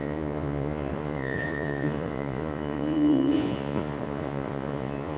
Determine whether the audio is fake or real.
fake